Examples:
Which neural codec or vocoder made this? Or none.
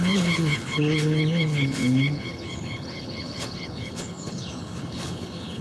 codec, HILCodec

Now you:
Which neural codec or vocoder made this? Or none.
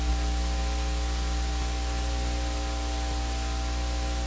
none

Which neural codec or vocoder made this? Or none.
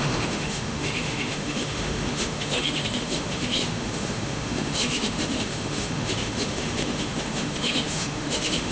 autoencoder, DAC-VAE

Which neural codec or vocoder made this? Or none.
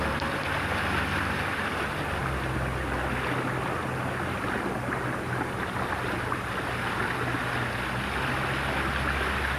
none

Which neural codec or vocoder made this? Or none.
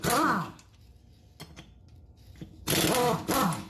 none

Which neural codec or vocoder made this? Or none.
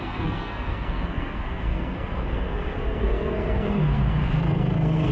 codec, SNAC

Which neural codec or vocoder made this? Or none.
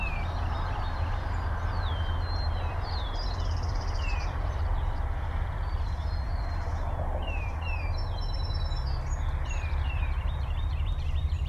vocoder, BigVGAN v2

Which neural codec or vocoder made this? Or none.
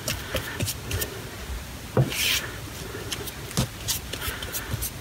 none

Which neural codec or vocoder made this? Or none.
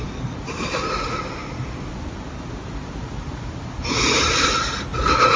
none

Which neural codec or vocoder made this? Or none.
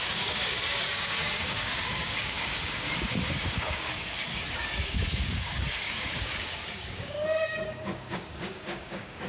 codec, DAC